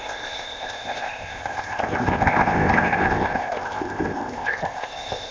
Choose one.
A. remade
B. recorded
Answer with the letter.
A